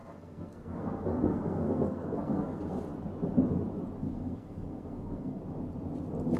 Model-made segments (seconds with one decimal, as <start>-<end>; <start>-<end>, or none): 0.0-2.8; 4.1-5.4